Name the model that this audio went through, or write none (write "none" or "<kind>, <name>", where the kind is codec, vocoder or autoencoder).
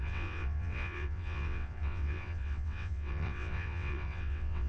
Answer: vocoder, WaveNeXt